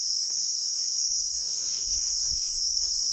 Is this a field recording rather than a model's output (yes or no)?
no